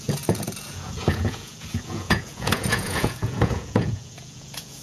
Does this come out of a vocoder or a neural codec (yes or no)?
yes